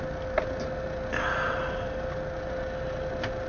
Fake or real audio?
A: real